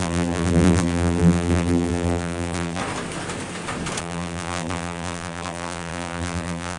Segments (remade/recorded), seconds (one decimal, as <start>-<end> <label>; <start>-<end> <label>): 0.0-2.8 remade; 2.8-4.0 recorded; 4.0-6.8 remade